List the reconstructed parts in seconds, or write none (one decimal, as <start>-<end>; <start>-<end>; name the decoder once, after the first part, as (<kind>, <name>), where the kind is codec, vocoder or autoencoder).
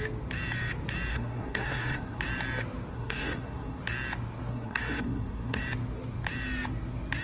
1.1-2.2 (codec, SNAC); 2.9-3.8; 4.5-5.6